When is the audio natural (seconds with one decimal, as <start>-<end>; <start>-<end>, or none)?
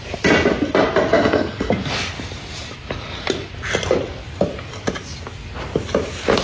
0.0-1.1; 1.7-6.4